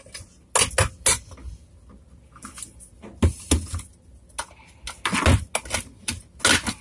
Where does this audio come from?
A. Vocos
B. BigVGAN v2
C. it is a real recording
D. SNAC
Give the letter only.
C